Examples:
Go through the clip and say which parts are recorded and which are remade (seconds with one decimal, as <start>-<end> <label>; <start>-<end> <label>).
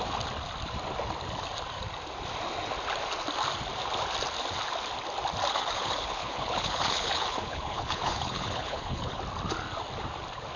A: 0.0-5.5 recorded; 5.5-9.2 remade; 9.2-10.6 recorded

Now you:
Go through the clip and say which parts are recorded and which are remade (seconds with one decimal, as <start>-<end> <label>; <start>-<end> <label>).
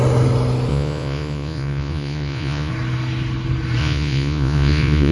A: 0.0-0.7 recorded; 0.7-2.7 remade; 2.7-3.8 recorded; 3.8-5.1 remade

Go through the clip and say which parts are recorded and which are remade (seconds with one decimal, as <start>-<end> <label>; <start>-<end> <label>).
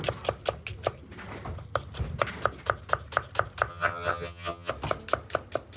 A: 0.0-3.7 recorded; 3.7-4.7 remade; 4.7-5.8 recorded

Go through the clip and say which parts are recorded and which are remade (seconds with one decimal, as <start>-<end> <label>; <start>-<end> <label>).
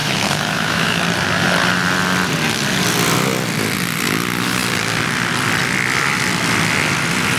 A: 0.0-1.0 remade; 1.0-7.4 recorded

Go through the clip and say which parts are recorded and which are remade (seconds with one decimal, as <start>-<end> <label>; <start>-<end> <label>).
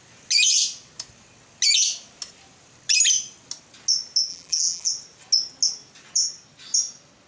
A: 0.0-4.3 recorded; 4.3-4.9 remade; 4.9-7.3 recorded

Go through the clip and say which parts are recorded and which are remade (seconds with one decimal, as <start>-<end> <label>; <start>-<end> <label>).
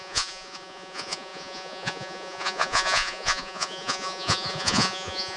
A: 0.0-5.4 remade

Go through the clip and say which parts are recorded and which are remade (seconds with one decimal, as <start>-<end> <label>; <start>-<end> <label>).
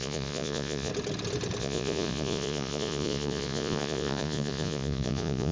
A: 0.0-0.9 remade; 0.9-1.6 recorded; 1.6-5.5 remade